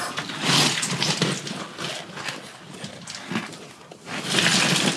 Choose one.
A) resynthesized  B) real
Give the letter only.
B